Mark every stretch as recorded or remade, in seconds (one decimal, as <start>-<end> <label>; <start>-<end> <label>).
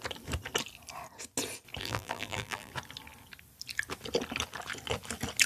0.0-1.8 recorded; 1.8-2.7 remade; 2.7-5.5 recorded